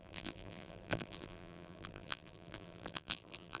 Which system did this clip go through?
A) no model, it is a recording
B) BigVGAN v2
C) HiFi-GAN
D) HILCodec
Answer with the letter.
B